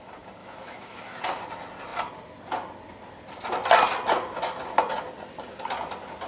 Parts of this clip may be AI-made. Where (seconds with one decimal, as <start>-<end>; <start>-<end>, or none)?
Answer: 0.4-1.2